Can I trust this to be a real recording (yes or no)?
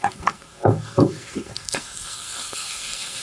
no